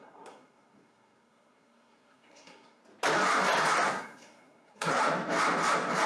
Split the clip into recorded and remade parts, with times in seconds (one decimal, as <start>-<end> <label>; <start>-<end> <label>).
0.0-2.8 remade; 2.8-3.9 recorded; 3.9-5.0 remade; 5.0-6.1 recorded